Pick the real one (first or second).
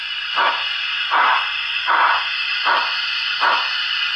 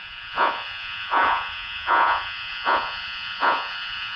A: first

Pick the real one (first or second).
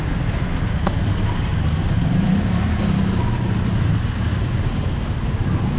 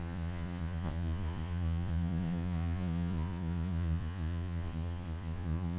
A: first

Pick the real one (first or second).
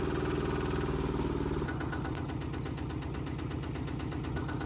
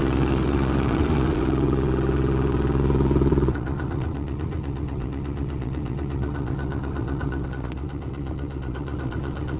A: first